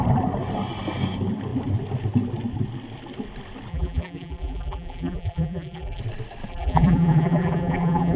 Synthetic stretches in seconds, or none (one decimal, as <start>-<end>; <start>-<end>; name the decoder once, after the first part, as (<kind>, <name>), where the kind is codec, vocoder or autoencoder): 3.7-6.0 (vocoder, BigVGAN v2); 6.5-8.2